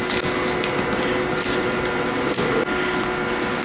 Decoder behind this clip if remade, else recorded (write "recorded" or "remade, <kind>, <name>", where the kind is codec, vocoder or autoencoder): recorded